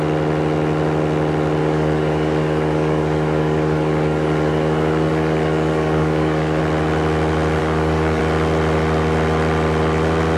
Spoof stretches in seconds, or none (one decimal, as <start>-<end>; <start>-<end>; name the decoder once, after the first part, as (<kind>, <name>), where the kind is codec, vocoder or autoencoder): 1.6-6.6 (codec, DAC); 7.6-8.2